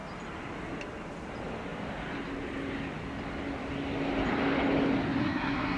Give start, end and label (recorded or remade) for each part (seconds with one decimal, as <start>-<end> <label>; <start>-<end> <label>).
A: 0.0-5.2 recorded; 5.2-5.8 remade